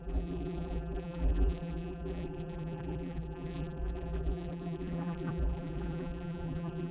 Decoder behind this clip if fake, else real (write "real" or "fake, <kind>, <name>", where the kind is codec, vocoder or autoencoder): fake, vocoder, BigVGAN v2